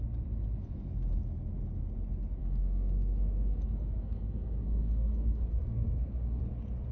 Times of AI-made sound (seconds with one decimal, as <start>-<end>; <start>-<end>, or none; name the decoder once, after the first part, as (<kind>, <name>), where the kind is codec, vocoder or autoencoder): 2.4-6.4 (codec, SNAC)